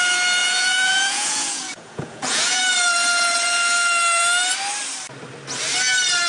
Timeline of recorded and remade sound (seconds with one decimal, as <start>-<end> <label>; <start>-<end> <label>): 0.0-0.4 recorded; 0.4-2.6 remade; 2.6-6.3 recorded